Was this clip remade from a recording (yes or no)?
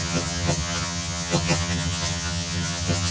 yes